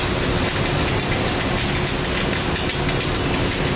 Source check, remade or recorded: recorded